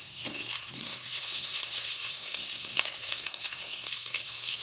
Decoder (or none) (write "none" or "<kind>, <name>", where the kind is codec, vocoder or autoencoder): codec, SNAC